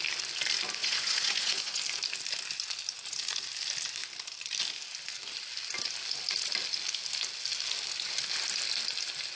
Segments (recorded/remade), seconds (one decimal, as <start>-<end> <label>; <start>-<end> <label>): 0.0-0.8 recorded; 0.8-1.8 remade; 1.8-9.4 recorded